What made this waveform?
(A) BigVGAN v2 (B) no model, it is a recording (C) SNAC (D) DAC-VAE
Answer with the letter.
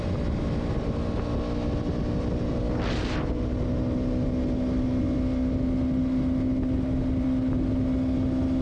B